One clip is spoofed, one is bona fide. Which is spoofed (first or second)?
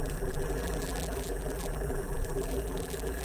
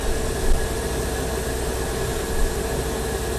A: first